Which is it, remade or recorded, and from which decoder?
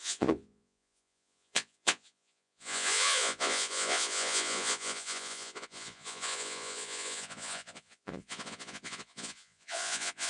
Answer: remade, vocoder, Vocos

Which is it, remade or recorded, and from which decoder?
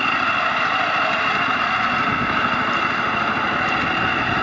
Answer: recorded